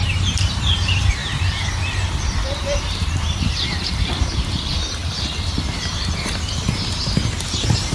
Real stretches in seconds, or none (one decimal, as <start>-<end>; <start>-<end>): 1.2-2.8; 5.0-7.3